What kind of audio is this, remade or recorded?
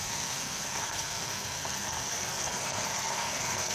remade